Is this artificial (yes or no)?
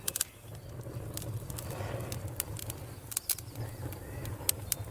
no